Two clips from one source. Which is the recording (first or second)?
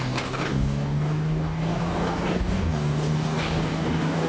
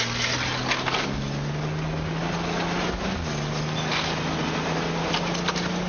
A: second